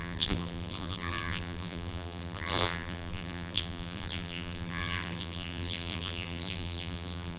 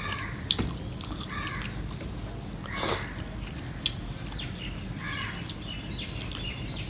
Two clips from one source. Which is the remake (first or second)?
first